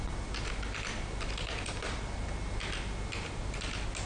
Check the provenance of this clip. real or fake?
real